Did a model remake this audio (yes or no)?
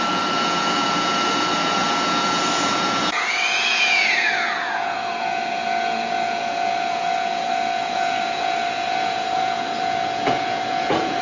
yes